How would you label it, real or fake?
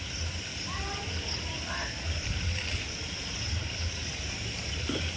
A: real